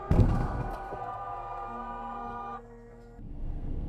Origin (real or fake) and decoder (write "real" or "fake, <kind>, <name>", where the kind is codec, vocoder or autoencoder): fake, codec, SNAC